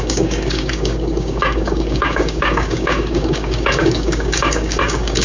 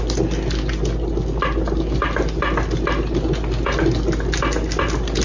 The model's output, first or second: first